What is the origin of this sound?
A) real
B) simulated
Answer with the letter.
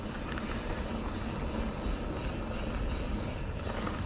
A